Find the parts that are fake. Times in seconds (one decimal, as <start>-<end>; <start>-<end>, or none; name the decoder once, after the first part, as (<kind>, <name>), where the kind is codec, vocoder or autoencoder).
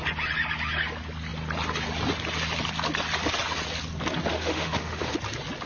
4.3-5.0 (autoencoder, DAC-VAE)